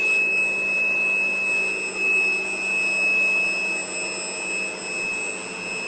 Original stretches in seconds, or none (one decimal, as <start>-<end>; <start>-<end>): 0.0-5.9